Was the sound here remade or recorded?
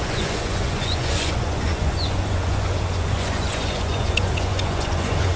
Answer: remade